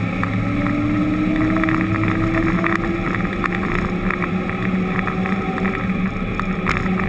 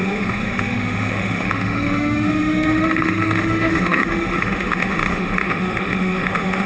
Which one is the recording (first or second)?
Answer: first